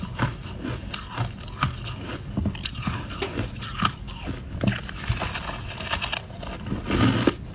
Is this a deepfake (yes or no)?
no